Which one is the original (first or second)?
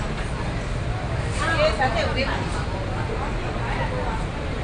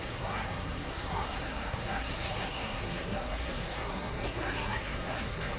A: first